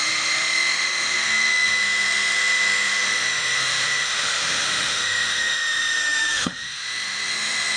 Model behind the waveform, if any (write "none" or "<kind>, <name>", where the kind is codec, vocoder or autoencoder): autoencoder, DAC-VAE